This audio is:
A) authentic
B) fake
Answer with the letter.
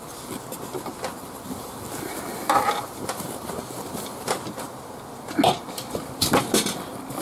A